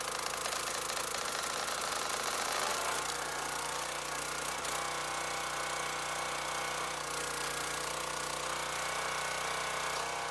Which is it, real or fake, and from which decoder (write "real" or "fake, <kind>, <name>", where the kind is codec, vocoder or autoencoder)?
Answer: real